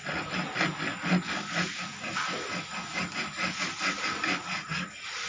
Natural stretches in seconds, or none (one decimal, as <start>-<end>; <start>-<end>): 0.0-5.3